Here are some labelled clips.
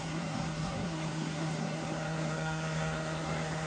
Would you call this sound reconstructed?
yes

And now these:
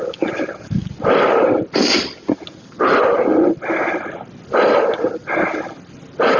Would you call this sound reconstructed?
no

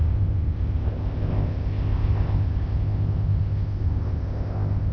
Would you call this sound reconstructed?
yes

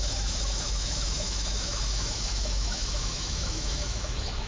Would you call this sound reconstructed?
yes